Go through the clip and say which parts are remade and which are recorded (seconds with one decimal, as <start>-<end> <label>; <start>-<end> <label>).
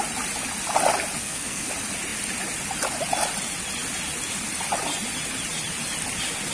0.0-1.2 recorded; 1.2-1.7 remade; 1.7-6.5 recorded